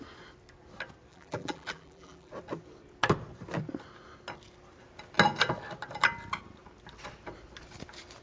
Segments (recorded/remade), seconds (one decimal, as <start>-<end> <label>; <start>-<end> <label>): 0.0-1.1 recorded; 1.1-2.3 remade; 2.3-8.2 recorded